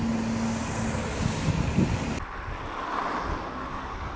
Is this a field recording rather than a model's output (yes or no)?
yes